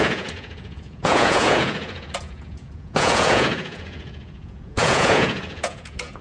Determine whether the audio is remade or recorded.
remade